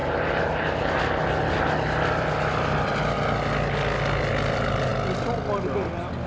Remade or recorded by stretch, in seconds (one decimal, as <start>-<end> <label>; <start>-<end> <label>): 0.0-6.3 recorded

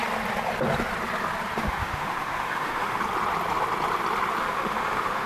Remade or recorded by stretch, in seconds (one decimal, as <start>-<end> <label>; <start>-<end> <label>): 0.0-1.6 recorded; 1.6-3.0 remade; 3.0-4.4 recorded; 4.4-5.3 remade

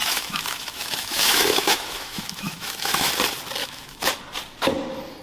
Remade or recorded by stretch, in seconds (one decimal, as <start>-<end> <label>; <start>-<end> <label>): 0.0-3.1 remade; 3.1-3.6 recorded; 3.6-4.1 remade; 4.1-5.2 recorded

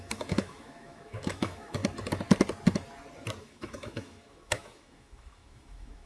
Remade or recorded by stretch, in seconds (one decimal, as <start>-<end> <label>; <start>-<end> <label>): 0.0-1.8 remade; 1.8-3.4 recorded; 3.4-6.1 remade

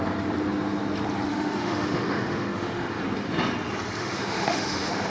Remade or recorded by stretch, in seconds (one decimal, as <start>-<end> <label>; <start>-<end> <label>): 0.0-1.3 recorded; 1.3-3.0 remade; 3.0-4.0 recorded; 4.0-5.1 remade

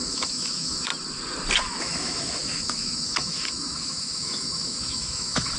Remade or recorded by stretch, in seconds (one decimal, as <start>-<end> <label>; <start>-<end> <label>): 0.0-0.9 remade; 0.9-1.8 recorded; 1.8-5.6 remade